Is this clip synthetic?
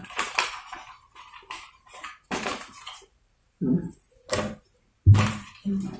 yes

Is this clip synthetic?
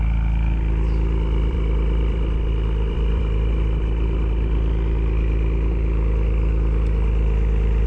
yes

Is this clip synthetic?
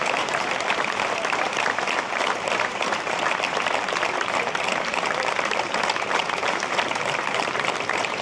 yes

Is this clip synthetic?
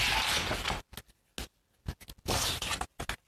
no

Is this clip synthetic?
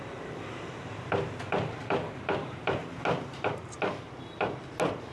yes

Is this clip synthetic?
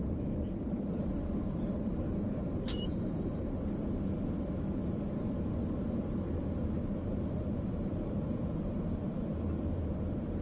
yes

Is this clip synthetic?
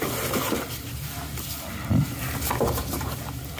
no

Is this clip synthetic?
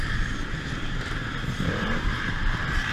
yes